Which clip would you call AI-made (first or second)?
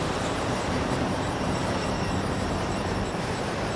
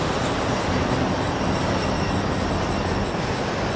first